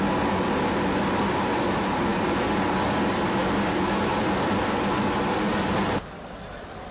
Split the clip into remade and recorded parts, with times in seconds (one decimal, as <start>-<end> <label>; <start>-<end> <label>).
0.0-6.9 recorded